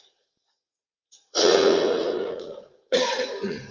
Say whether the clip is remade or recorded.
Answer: remade